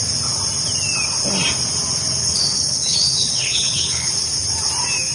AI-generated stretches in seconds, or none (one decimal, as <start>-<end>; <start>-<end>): 2.2-4.1